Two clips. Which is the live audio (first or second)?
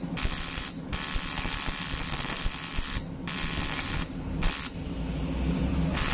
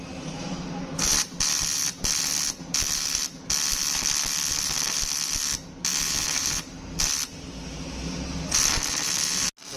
second